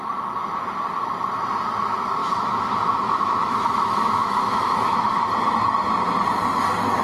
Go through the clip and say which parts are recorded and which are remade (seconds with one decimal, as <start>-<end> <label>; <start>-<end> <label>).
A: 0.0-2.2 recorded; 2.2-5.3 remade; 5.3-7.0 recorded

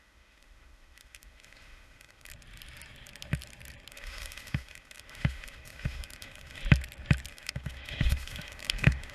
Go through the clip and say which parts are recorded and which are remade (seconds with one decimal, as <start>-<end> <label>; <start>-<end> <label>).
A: 0.0-2.3 remade; 2.3-3.9 recorded; 3.9-6.6 remade; 6.6-7.3 recorded; 7.3-9.1 remade

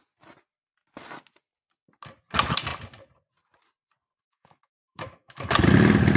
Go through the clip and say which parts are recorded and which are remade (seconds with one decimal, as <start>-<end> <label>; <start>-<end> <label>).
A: 0.0-4.2 recorded; 4.2-5.6 remade; 5.6-6.2 recorded

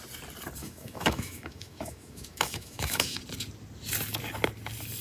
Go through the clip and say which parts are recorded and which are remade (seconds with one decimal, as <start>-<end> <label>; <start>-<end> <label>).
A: 0.0-0.6 recorded; 0.6-3.2 remade; 3.2-5.0 recorded

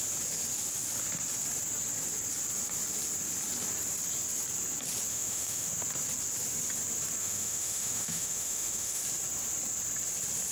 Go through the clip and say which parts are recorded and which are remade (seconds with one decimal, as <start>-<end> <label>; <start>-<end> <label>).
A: 0.0-5.1 recorded; 5.1-5.7 remade; 5.7-7.2 recorded; 7.2-9.0 remade; 9.0-10.5 recorded

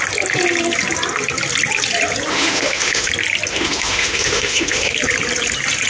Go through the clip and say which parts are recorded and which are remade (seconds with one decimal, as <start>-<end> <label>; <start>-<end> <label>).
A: 0.0-2.3 recorded; 2.3-3.1 remade; 3.1-3.5 recorded; 3.5-4.9 remade; 4.9-5.9 recorded

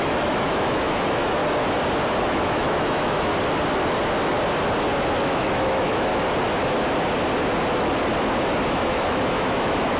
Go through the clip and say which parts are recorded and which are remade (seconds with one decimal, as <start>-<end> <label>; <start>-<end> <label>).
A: 0.0-1.4 remade; 1.4-2.2 recorded; 2.2-3.3 remade; 3.3-5.3 recorded; 5.3-6.1 remade; 6.1-8.7 recorded; 8.7-10.0 remade